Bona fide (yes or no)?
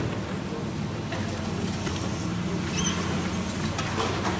yes